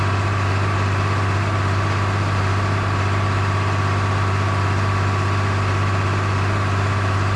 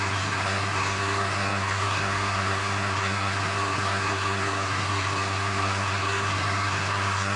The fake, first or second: second